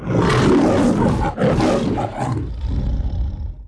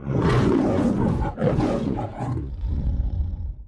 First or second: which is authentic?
first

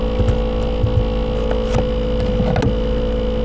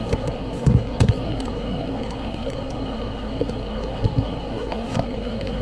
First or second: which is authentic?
first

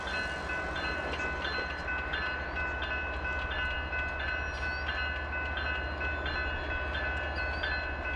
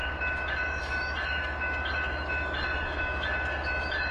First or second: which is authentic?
first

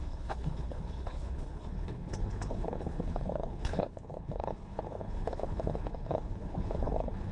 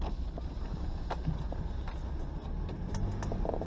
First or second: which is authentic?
second